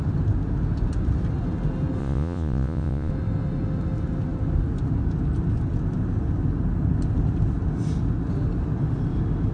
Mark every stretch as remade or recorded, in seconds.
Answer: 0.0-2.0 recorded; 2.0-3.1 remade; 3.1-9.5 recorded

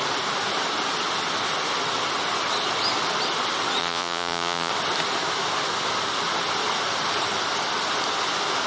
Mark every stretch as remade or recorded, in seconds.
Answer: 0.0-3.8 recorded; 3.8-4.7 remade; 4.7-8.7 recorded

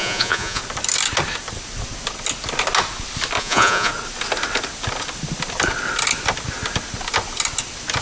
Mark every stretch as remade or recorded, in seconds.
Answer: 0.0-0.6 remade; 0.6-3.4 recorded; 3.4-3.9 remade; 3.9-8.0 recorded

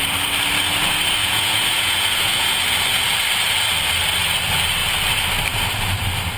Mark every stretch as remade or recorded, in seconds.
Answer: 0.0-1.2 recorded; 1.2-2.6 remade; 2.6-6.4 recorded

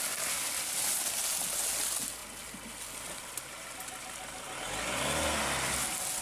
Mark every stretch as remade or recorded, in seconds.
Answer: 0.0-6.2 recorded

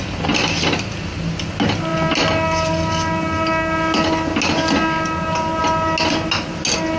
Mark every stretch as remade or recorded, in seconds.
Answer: 0.0-7.0 recorded